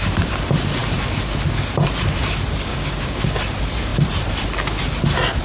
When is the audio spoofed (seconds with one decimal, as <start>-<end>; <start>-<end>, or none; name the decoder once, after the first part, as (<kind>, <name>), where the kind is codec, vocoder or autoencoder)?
2.7-3.4 (codec, DAC)